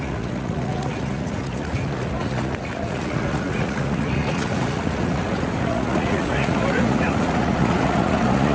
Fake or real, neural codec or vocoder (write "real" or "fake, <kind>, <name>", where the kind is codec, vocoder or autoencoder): fake, vocoder, Vocos